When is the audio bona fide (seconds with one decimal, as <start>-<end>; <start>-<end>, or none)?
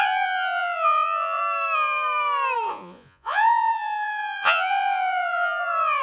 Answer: 1.4-2.7